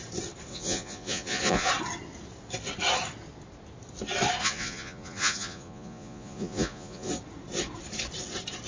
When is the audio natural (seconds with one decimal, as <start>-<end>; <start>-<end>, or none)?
0.0-0.5; 1.7-4.4; 7.1-8.7